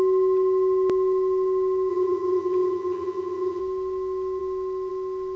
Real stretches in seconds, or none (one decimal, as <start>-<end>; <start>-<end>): 0.0-1.9; 3.6-5.4